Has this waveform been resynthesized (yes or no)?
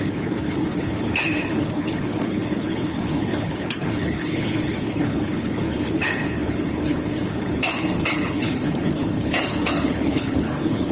yes